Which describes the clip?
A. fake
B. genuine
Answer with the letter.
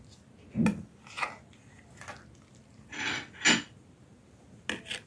B